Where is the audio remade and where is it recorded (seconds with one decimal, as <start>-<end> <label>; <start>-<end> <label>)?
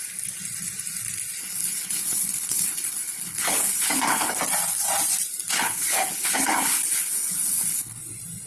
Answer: 0.0-1.4 recorded; 1.4-4.3 remade; 4.3-5.5 recorded; 5.5-8.0 remade; 8.0-8.5 recorded